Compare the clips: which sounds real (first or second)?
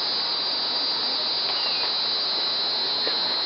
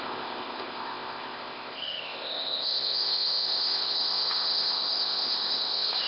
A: first